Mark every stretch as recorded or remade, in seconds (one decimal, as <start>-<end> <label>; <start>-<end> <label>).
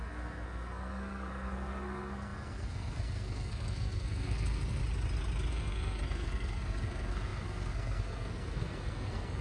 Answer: 0.0-4.8 remade; 4.8-5.5 recorded; 5.5-9.4 remade